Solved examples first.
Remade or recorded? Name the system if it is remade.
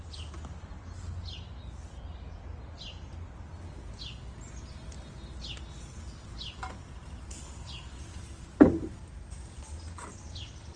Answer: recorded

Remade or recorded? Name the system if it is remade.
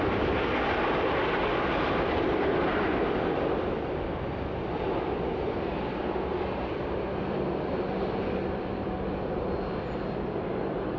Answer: recorded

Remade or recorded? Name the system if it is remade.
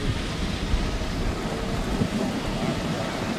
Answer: recorded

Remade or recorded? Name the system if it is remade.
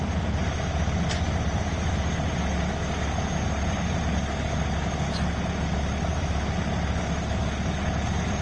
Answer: recorded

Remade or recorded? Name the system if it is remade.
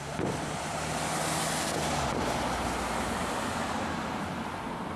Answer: recorded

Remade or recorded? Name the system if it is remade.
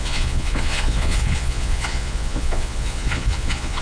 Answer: remade, vocoder, Vocos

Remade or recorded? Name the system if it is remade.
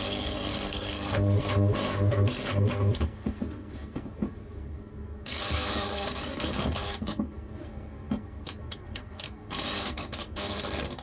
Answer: remade, codec, SNAC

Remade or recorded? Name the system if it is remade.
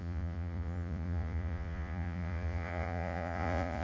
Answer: remade, vocoder, Vocos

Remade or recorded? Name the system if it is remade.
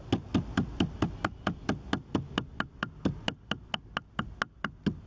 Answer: recorded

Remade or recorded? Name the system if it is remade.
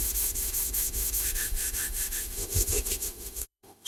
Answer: remade, autoencoder, DAC-VAE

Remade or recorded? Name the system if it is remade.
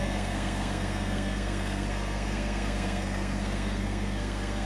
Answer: remade, codec, SNAC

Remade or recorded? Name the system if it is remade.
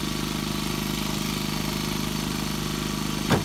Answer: recorded